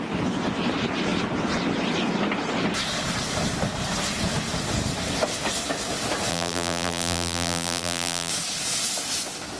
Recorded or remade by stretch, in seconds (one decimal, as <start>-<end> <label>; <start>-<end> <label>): 0.0-6.3 recorded; 6.3-8.3 remade; 8.3-9.6 recorded